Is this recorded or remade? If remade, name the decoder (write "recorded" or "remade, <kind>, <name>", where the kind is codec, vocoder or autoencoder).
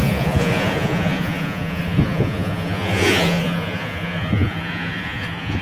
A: remade, vocoder, Vocos